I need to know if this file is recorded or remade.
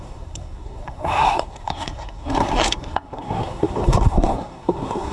remade